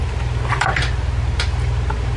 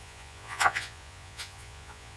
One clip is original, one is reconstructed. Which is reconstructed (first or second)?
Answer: second